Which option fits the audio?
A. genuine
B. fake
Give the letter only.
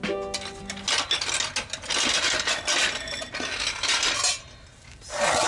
A